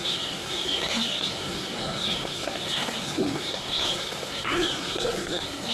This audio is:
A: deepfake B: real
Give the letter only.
A